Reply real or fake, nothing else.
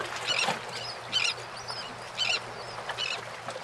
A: real